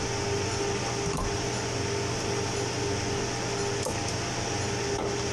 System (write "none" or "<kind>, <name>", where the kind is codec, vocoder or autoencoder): none